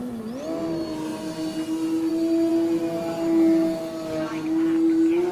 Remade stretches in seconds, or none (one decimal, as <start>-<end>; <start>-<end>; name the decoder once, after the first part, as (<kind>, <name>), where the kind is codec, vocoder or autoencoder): none